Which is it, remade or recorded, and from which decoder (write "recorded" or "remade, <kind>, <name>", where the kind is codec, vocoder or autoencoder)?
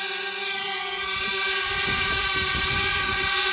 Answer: remade, vocoder, BigVGAN v2